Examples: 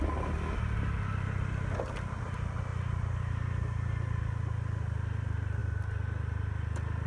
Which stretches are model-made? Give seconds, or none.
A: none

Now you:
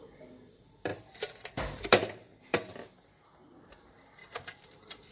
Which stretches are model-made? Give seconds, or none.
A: 0.9-2.7 (vocoder, BigVGAN v2); 4.2-5.1

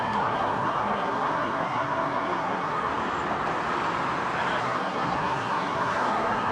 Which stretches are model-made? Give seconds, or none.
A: 0.0-2.9 (codec, SNAC); 4.6-6.5

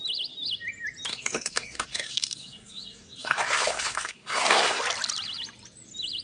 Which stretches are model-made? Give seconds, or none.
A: 1.1-4.8 (codec, SNAC)

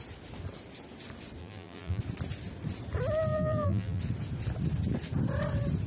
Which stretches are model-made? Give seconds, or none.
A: 1.4-2.0 (vocoder, BigVGAN v2); 3.3-4.0

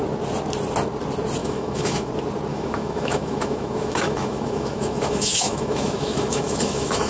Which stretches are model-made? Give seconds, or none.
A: 1.4-2.1 (autoencoder, DAC-VAE); 2.5-7.1